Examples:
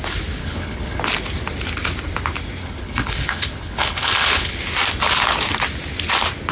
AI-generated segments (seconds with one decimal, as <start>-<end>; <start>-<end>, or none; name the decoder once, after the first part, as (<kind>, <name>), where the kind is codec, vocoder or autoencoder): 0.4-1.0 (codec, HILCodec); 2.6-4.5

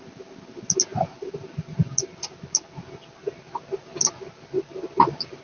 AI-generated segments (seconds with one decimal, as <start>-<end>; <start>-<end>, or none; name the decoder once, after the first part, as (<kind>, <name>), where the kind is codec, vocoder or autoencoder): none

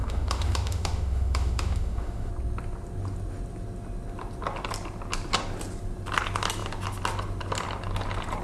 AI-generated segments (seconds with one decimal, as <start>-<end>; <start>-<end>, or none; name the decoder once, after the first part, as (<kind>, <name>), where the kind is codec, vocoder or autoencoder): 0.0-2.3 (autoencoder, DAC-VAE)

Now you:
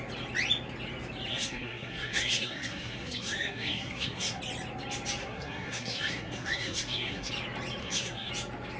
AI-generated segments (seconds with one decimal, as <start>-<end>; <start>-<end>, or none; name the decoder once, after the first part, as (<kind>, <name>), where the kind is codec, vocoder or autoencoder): 1.3-4.4 (codec, SNAC); 5.2-7.3; 7.8-8.3

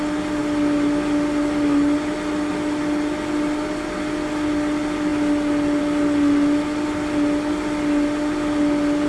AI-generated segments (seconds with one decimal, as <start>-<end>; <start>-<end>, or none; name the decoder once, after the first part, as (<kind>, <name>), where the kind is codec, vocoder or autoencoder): none

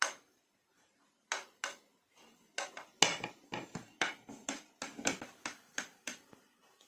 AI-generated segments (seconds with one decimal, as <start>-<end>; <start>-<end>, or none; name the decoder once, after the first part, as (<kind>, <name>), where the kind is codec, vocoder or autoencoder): none

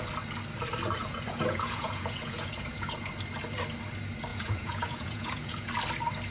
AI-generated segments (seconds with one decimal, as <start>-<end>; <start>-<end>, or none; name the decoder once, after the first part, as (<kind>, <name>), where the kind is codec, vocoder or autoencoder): 1.0-3.1 (vocoder, Vocos); 4.3-5.7